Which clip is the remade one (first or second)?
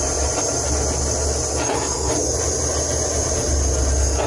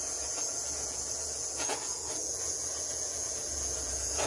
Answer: second